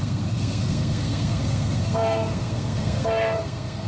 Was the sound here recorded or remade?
remade